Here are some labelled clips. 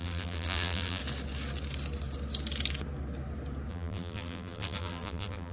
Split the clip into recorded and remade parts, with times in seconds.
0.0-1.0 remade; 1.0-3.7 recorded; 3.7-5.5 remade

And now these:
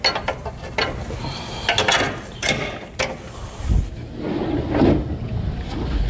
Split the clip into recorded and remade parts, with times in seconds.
0.0-6.1 recorded

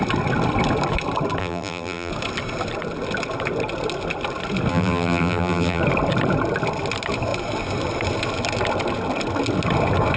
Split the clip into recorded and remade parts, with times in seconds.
0.0-1.4 recorded; 1.4-2.1 remade; 2.1-4.7 recorded; 4.7-5.8 remade; 5.8-10.2 recorded

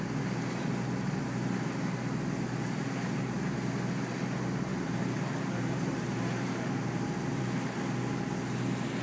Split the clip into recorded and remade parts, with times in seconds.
0.0-4.7 recorded; 4.7-7.4 remade; 7.4-9.0 recorded

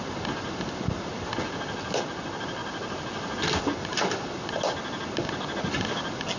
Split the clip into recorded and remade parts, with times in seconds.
0.0-6.4 recorded

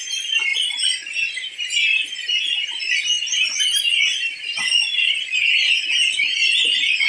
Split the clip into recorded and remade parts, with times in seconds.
0.0-7.1 recorded

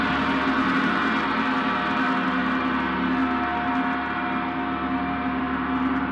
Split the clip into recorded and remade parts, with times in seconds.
0.0-6.1 recorded